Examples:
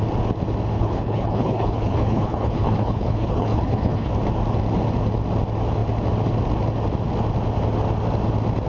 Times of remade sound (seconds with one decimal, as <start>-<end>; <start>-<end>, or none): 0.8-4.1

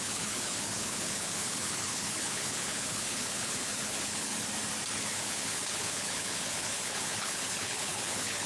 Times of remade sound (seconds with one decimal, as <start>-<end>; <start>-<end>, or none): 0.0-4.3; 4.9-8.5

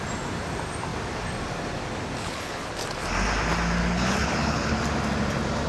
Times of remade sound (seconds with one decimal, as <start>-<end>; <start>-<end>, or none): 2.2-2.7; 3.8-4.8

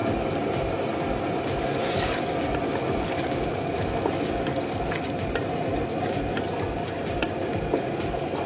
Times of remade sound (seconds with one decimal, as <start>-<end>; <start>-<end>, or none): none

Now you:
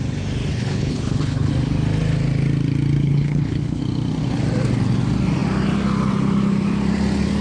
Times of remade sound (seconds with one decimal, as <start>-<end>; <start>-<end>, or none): 0.5-1.5; 3.0-3.8

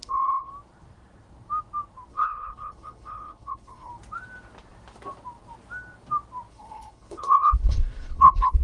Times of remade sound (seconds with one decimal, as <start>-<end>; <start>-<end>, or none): 0.0-0.5; 2.1-3.9; 6.5-8.6

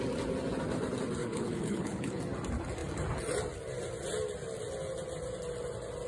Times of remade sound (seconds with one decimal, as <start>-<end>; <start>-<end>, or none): 1.2-2.2

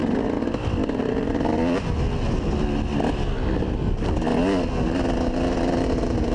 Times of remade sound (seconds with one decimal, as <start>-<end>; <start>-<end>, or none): none